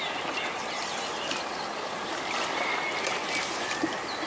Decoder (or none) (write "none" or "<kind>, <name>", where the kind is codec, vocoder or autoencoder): none